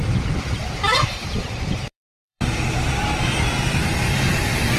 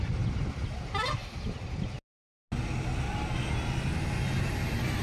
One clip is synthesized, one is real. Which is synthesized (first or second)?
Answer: first